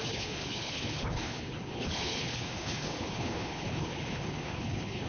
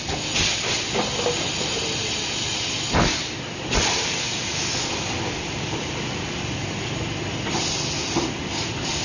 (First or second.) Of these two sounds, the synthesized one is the first